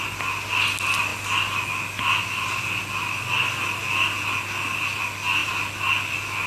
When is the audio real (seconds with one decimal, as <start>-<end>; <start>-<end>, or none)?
0.0-6.5